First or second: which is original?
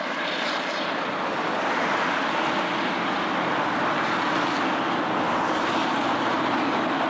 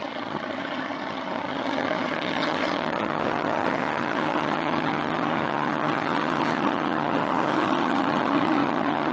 first